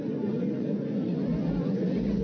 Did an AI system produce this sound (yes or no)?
yes